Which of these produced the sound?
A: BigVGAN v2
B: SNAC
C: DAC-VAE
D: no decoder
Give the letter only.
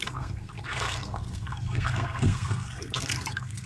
B